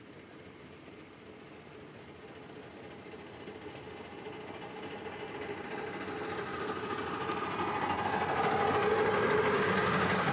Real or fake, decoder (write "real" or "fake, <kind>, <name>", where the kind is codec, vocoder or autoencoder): real